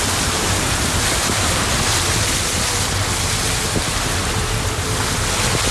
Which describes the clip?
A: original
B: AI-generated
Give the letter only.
A